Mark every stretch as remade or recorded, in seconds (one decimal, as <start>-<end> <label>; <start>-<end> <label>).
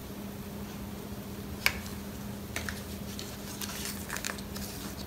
0.0-5.1 recorded